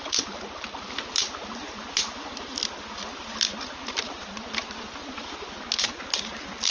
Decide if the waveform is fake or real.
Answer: real